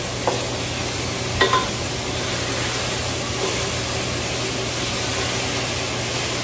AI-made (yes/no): no